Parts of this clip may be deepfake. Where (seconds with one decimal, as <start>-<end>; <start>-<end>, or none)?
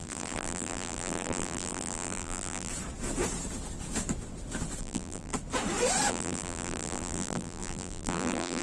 0.0-2.7; 4.8-5.3; 6.1-8.6